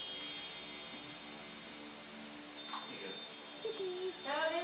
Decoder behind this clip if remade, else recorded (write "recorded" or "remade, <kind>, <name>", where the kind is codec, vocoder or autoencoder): recorded